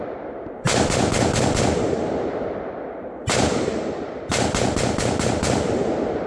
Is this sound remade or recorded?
remade